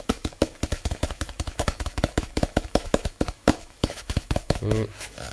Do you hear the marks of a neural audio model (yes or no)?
yes